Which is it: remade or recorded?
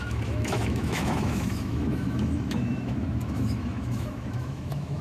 remade